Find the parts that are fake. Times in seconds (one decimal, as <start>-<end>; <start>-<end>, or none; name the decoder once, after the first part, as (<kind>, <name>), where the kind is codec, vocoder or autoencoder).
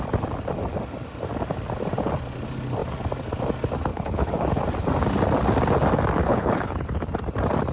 3.9-4.6 (codec, HILCodec); 6.2-7.1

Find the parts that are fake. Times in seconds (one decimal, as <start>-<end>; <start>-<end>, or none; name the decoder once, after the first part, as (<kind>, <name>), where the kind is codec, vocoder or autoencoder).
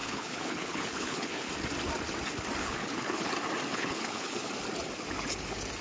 0.0-1.5 (codec, HILCodec); 2.6-3.3; 3.7-4.5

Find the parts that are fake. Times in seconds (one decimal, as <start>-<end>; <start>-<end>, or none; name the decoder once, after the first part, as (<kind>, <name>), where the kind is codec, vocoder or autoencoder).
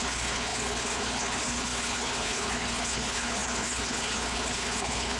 0.0-5.2 (codec, HILCodec)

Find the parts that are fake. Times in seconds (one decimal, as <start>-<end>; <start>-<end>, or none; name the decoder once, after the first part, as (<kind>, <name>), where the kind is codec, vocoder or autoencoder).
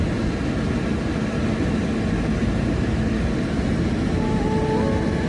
none